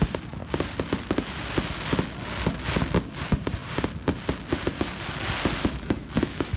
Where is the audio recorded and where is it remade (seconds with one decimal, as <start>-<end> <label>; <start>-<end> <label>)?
0.0-5.6 recorded; 5.6-6.6 remade